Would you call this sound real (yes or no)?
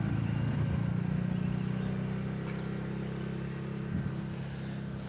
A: yes